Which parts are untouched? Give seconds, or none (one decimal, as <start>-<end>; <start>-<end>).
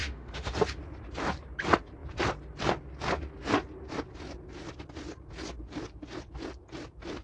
0.5-7.2